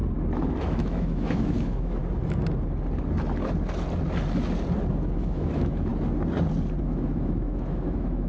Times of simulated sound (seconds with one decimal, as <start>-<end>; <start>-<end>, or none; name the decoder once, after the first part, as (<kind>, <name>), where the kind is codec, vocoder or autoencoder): 0.6-2.0 (autoencoder, DAC-VAE); 4.9-5.9; 6.8-8.3